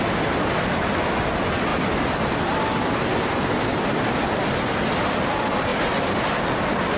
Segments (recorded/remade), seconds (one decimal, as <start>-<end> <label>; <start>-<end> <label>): 0.0-7.0 recorded